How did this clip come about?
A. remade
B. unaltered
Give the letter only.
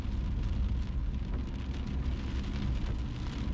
B